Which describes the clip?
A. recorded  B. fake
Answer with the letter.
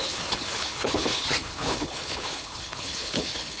B